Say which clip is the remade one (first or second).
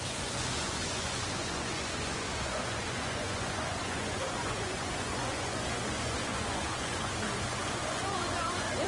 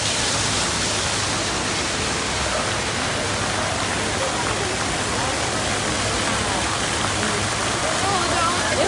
first